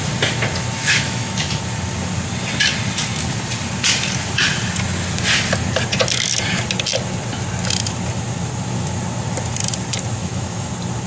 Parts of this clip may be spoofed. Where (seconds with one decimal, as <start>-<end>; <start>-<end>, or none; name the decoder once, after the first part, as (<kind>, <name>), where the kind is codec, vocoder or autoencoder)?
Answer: 0.8-1.6 (autoencoder, DAC-VAE); 10.2-10.7